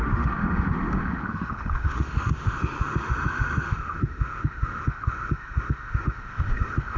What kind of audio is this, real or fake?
fake